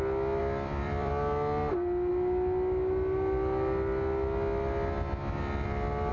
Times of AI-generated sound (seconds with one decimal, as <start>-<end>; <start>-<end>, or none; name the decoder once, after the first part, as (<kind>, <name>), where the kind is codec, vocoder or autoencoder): 0.4-1.1 (vocoder, BigVGAN v2)